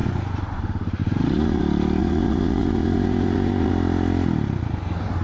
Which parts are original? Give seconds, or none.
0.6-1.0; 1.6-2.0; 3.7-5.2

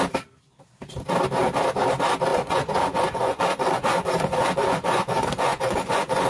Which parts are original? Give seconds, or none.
0.0-2.3